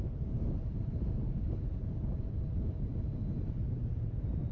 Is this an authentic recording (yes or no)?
no